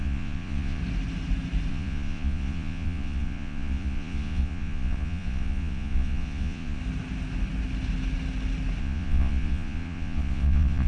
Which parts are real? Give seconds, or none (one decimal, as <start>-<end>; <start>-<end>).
0.8-1.7; 6.8-8.8